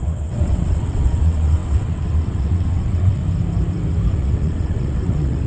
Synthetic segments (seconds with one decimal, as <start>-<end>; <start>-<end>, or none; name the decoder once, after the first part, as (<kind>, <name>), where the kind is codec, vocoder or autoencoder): 0.0-3.2 (vocoder, WaveNeXt); 4.1-5.5